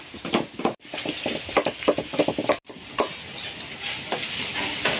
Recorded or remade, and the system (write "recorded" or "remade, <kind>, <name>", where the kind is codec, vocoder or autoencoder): recorded